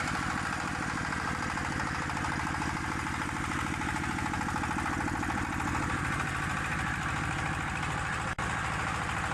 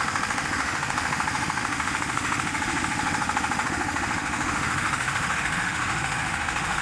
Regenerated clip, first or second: second